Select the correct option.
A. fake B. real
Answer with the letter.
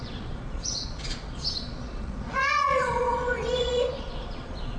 A